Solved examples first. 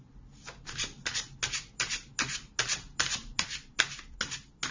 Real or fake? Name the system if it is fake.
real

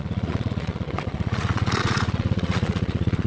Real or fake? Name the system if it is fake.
fake, vocoder, Vocos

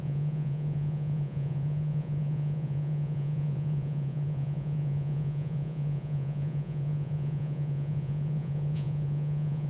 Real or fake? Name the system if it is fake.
fake, vocoder, Vocos